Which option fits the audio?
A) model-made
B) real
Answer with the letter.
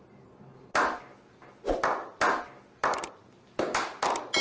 B